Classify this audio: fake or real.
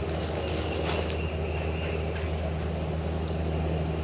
real